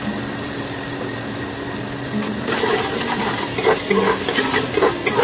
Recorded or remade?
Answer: recorded